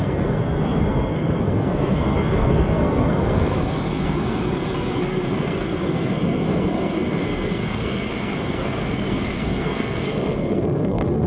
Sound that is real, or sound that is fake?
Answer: fake